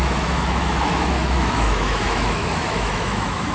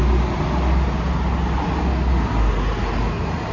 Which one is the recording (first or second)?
second